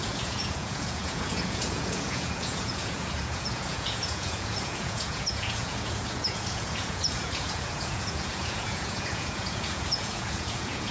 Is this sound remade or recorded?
remade